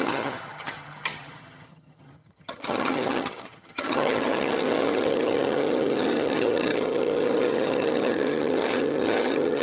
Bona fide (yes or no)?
no